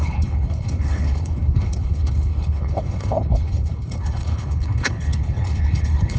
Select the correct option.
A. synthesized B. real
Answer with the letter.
A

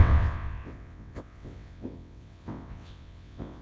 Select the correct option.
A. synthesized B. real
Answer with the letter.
A